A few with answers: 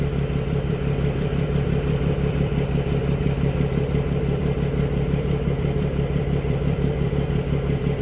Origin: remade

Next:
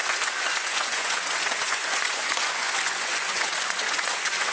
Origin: remade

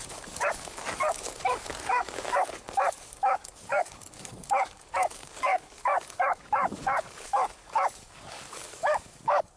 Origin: remade